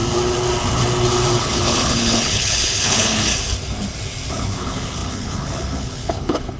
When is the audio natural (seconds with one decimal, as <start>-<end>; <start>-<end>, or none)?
0.0-1.4; 3.3-4.3